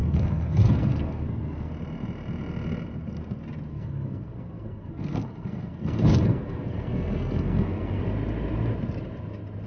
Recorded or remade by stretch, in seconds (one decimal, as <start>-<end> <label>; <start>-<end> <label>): 0.0-1.7 remade; 1.7-3.7 recorded; 3.7-8.0 remade; 8.0-9.7 recorded